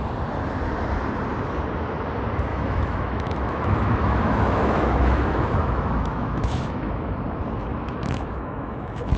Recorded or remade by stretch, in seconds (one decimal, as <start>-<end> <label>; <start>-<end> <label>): 0.0-2.5 recorded; 2.5-6.9 remade; 6.9-7.7 recorded; 7.7-9.2 remade

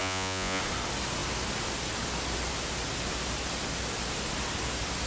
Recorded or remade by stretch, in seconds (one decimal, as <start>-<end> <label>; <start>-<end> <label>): 0.0-0.6 remade; 0.6-5.1 recorded

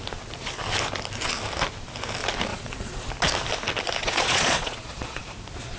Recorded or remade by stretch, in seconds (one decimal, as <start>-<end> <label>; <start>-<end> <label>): 0.0-2.5 recorded; 2.5-3.1 remade; 3.1-4.0 recorded; 4.0-5.2 remade; 5.2-5.8 recorded

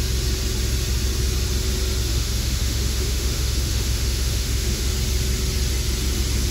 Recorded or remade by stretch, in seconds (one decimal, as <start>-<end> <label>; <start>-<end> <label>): 0.0-2.1 recorded; 2.1-4.9 remade; 4.9-6.5 recorded